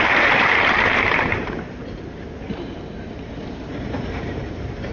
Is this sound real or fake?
fake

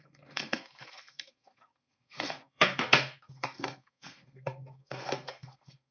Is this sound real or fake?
fake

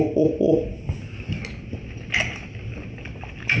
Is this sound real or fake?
real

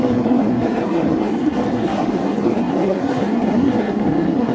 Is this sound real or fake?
fake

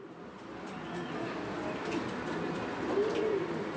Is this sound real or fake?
real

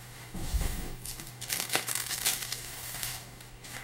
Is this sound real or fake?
fake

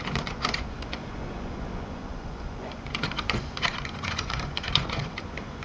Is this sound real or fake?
fake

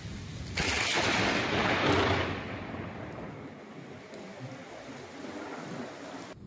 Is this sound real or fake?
real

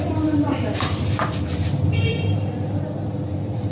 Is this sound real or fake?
fake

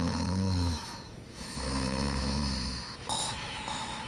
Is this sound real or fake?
fake